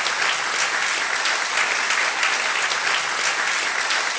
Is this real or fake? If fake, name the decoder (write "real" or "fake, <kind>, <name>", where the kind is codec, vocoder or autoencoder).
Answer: real